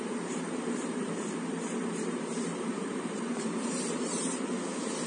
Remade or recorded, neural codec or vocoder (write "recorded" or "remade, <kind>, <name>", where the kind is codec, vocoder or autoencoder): remade, vocoder, BigVGAN v2